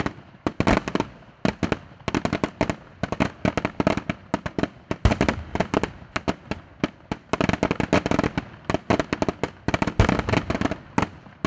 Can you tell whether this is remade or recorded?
recorded